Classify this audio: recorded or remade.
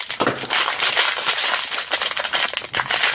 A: recorded